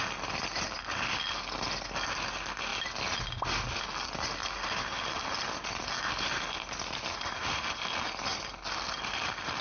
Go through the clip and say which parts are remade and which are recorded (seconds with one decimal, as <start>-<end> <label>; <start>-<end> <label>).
0.0-9.6 recorded